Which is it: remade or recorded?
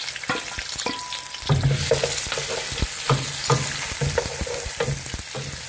recorded